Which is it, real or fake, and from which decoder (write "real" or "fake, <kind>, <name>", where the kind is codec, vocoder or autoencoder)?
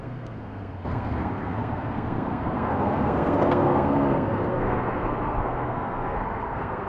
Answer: fake, codec, SNAC